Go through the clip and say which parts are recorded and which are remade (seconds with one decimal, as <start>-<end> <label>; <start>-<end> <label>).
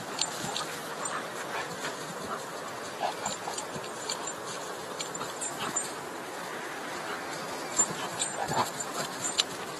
0.0-0.8 recorded; 0.8-5.4 remade; 5.4-6.5 recorded; 6.5-7.4 remade; 7.4-8.4 recorded; 8.4-9.8 remade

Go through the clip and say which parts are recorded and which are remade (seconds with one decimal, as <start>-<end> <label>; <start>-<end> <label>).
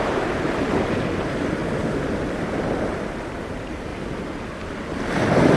0.0-1.6 remade; 1.6-3.0 recorded; 3.0-3.9 remade; 3.9-5.6 recorded